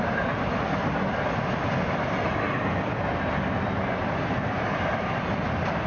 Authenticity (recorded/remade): recorded